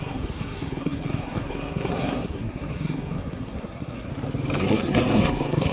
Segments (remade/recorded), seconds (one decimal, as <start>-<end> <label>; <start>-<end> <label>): 0.0-4.1 remade; 4.1-4.6 recorded; 4.6-5.7 remade